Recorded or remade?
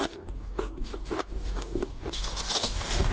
remade